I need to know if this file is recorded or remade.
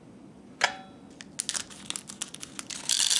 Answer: recorded